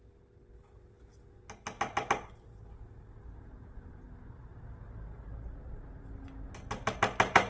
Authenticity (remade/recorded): recorded